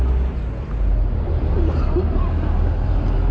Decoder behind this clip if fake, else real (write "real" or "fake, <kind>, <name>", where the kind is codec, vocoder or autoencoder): real